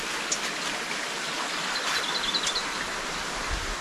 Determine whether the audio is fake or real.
real